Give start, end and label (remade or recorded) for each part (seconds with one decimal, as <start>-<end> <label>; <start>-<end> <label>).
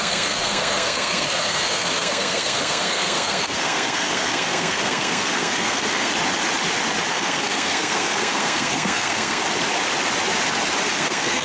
0.0-6.1 remade; 6.1-7.1 recorded; 7.1-9.4 remade; 9.4-10.9 recorded; 10.9-11.4 remade